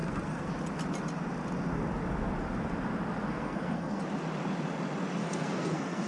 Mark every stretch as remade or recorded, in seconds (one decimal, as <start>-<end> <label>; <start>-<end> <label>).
0.0-0.5 remade; 0.5-3.2 recorded; 3.2-4.0 remade; 4.0-5.2 recorded; 5.2-6.1 remade